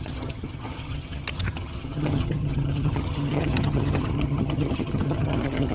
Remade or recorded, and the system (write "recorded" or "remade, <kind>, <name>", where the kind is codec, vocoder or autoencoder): remade, vocoder, HiFi-GAN